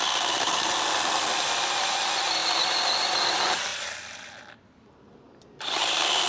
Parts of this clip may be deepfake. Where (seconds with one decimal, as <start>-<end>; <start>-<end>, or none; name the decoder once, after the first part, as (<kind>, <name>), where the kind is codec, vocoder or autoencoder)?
3.7-4.4 (vocoder, BigVGAN v2)